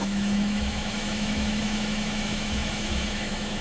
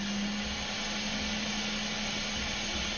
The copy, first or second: first